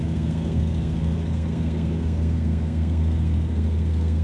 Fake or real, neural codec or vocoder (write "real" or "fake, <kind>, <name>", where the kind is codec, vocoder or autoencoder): fake, codec, SNAC